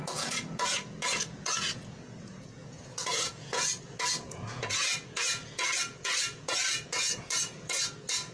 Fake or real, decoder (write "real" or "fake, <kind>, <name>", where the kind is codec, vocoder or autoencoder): fake, vocoder, Vocos